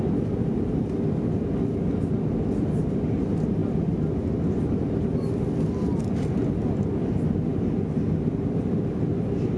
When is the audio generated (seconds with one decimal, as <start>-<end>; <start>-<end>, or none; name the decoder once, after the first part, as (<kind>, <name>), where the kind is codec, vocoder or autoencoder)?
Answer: none